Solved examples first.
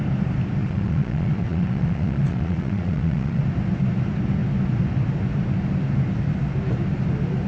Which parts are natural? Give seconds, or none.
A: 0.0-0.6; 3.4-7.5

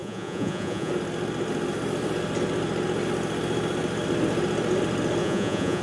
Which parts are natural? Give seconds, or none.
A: 0.9-5.2

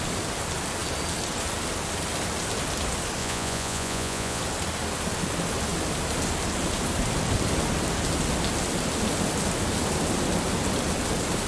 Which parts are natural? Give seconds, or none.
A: 0.0-3.2; 4.4-11.5

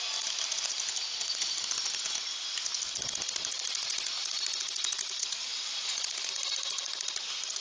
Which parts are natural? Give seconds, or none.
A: 0.0-5.2; 6.3-7.6

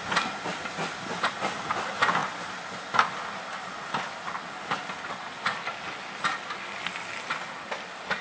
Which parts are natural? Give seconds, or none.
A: 0.0-8.2